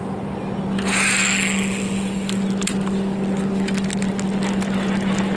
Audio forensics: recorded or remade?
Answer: recorded